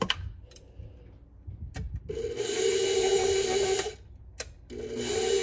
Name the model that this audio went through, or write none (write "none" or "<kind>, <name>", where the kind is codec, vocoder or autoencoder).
none